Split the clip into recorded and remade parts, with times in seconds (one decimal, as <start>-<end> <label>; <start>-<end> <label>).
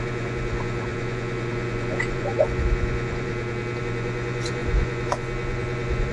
0.0-3.3 remade; 3.3-3.8 recorded; 3.8-6.1 remade